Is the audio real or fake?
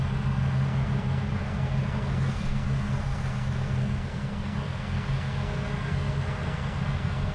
fake